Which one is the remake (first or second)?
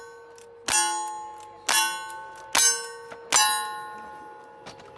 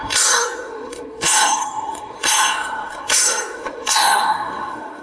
second